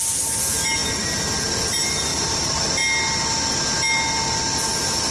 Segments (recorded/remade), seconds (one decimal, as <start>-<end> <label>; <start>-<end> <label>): 0.0-5.1 recorded